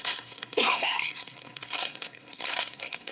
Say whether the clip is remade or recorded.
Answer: remade